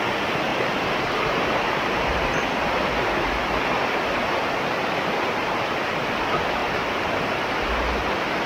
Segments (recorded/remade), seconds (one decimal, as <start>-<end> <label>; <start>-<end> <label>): 0.0-0.5 recorded; 0.5-3.3 remade; 3.3-6.6 recorded; 6.6-7.5 remade; 7.5-8.5 recorded